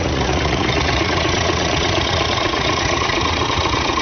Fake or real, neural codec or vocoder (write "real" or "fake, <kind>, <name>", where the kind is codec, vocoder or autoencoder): fake, vocoder, Vocos